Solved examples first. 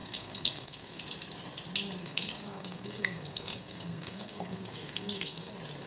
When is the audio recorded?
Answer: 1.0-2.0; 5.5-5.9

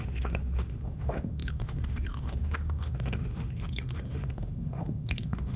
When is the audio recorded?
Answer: none

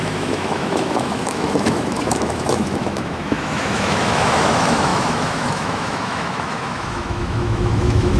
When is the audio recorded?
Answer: none

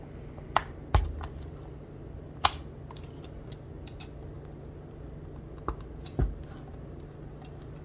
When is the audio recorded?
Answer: 0.0-7.8

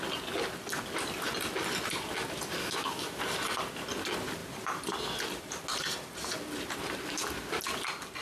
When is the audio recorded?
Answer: 0.0-2.6; 3.2-8.2

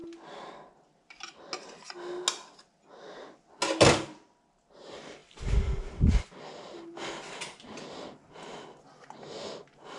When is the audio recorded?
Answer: 0.0-10.0

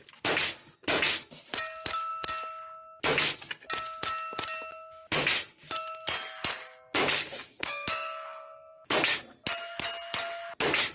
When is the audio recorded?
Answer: 0.0-7.0; 9.2-10.9